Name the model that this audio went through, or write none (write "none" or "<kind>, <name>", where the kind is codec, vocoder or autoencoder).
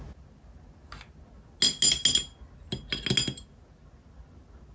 none